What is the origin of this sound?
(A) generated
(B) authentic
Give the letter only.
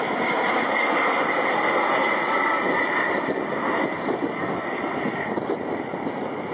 B